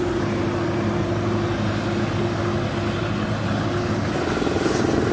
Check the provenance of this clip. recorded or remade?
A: recorded